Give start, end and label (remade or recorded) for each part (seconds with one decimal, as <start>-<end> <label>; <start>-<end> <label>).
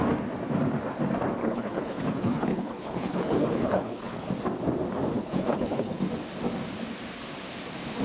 0.0-1.4 recorded; 1.4-4.3 remade; 4.3-5.1 recorded; 5.1-6.0 remade; 6.0-8.0 recorded